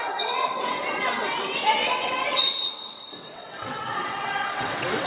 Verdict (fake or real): fake